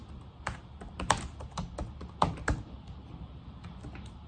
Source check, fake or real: real